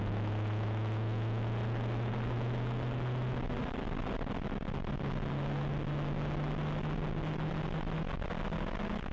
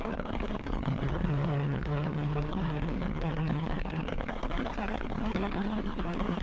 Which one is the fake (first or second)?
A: second